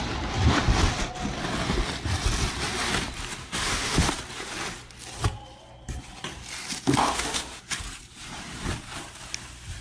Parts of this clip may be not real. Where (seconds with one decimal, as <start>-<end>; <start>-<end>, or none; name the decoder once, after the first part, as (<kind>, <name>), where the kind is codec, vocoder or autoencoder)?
3.4-4.1 (autoencoder, DAC-VAE); 7.0-7.6